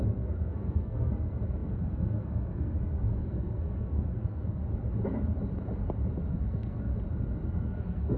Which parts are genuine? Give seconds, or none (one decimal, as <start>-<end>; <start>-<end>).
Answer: 4.6-6.3; 6.9-7.6